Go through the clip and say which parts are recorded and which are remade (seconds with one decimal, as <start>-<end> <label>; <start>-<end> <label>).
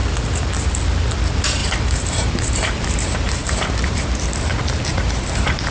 0.0-1.6 recorded; 1.6-4.1 remade; 4.1-4.9 recorded; 4.9-5.7 remade